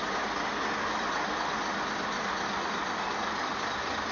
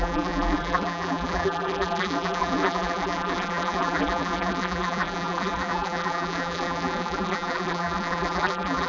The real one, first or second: first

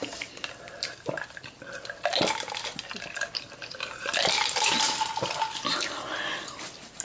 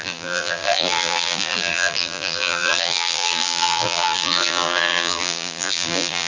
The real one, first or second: first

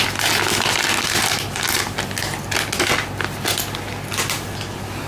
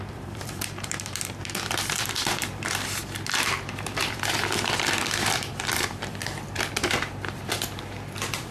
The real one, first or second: first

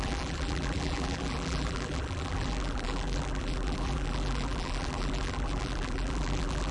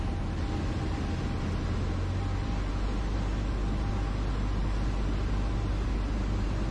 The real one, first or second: second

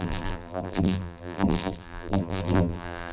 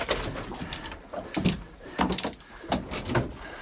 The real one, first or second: second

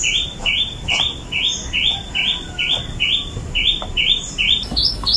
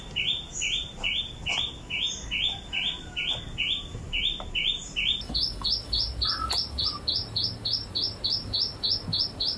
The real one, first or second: second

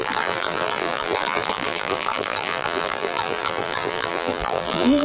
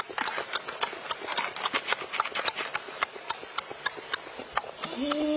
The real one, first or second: second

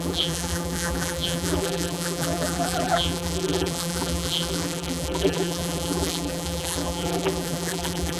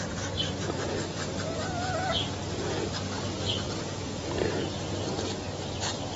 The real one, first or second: second